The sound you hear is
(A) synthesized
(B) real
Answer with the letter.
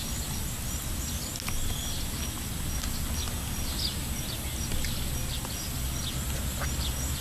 B